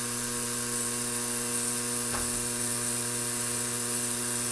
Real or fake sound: real